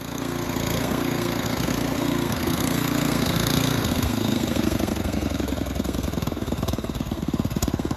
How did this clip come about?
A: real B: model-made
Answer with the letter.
B